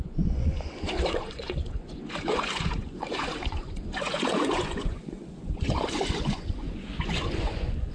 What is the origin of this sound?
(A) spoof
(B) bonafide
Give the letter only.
A